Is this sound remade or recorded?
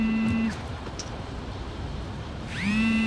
remade